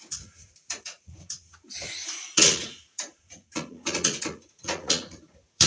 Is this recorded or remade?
remade